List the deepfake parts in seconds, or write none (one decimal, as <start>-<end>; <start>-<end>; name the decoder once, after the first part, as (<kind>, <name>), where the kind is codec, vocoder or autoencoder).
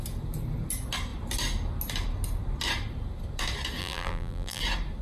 3.8-4.6 (vocoder, BigVGAN v2)